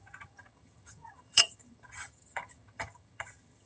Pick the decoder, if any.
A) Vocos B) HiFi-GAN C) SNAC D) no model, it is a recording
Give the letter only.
B